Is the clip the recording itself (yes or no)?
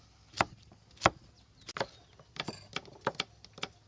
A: yes